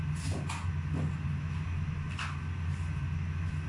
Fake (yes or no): no